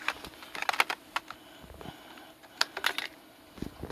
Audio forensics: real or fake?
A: real